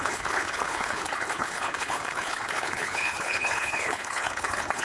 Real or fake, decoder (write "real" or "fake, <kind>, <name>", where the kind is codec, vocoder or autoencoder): fake, codec, HILCodec